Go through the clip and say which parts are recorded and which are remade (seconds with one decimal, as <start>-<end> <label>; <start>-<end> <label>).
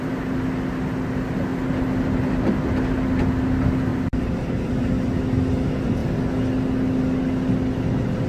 0.0-3.9 recorded; 3.9-4.7 remade; 4.7-8.3 recorded